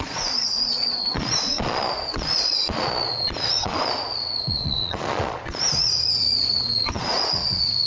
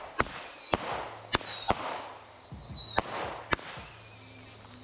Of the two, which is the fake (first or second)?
first